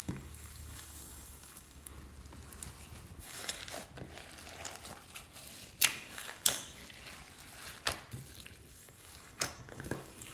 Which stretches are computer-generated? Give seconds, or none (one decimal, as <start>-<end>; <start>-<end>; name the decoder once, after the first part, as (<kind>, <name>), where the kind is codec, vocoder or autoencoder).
0.0-1.9 (codec, DAC); 3.2-3.6; 5.9-6.8; 8.7-10.3